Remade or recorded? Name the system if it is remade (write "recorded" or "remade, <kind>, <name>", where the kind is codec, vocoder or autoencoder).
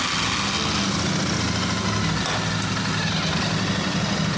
recorded